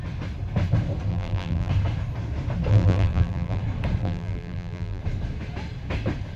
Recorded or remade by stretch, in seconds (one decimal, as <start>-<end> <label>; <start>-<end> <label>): 0.0-1.1 recorded; 1.1-1.7 remade; 1.7-2.7 recorded; 2.7-3.6 remade; 3.6-4.0 recorded; 4.0-5.0 remade; 5.0-6.4 recorded